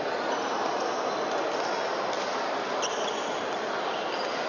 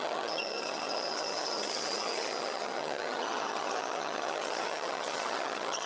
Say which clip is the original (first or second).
first